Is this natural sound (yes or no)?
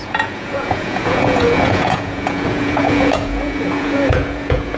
no